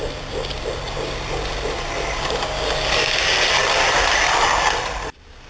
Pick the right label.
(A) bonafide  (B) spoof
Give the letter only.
A